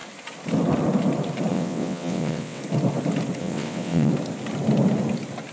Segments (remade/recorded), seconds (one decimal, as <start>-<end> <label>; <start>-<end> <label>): 0.0-1.5 recorded; 1.5-2.6 remade; 2.6-3.4 recorded; 3.4-4.1 remade; 4.1-5.5 recorded